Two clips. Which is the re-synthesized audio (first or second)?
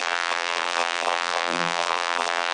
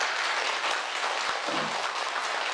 first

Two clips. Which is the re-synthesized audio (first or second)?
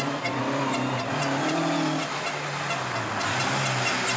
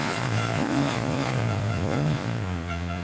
second